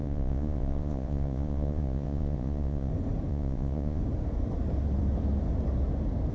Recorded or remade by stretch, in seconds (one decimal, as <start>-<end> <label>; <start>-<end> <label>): 0.0-2.9 remade; 2.9-3.3 recorded; 3.3-4.0 remade; 4.0-6.3 recorded